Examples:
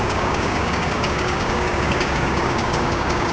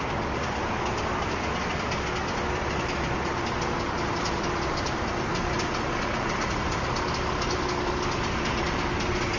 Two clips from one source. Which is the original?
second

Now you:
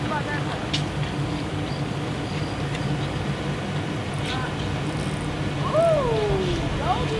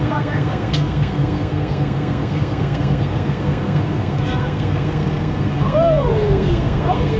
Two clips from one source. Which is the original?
first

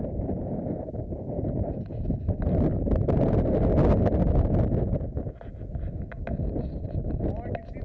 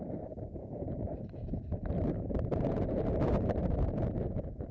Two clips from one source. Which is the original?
first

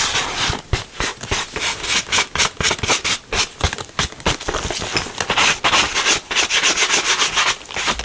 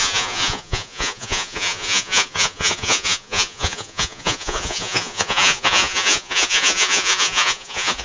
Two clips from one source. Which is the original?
first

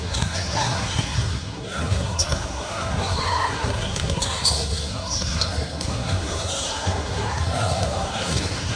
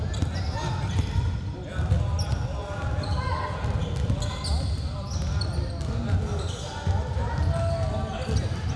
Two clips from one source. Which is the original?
second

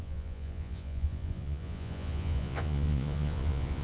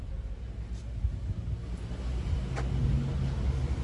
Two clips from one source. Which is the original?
second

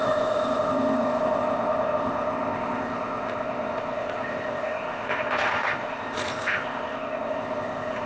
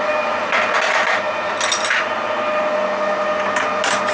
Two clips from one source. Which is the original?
second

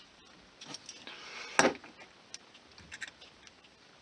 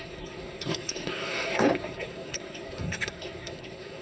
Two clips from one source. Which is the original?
first